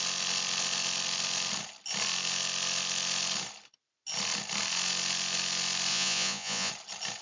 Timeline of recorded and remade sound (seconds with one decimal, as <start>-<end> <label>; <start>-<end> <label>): 0.0-5.9 recorded; 5.9-6.7 remade; 6.7-7.2 recorded